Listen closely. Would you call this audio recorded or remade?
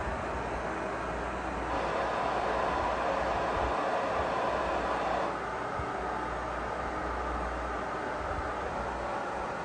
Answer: recorded